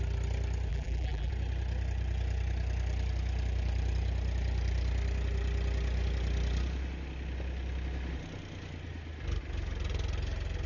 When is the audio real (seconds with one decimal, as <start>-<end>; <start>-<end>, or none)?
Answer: 0.0-0.7; 1.3-10.7